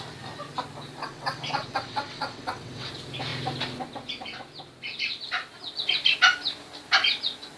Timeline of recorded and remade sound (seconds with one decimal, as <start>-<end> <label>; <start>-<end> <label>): 0.0-1.0 recorded; 1.0-2.9 remade; 2.9-7.6 recorded